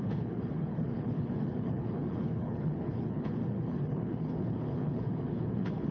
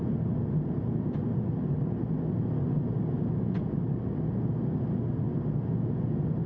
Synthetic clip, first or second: first